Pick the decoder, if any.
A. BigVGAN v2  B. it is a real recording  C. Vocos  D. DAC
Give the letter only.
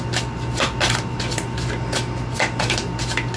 B